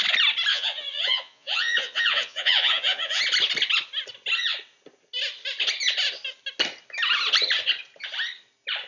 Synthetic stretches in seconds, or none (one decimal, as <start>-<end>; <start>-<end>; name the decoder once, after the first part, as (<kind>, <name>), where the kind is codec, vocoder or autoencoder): 0.5-3.2 (vocoder, Vocos)